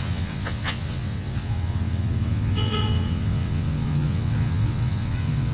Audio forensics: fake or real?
fake